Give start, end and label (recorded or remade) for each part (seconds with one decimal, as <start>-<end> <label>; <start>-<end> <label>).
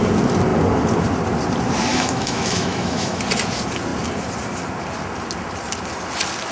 0.0-1.9 recorded; 1.9-3.2 remade; 3.2-6.5 recorded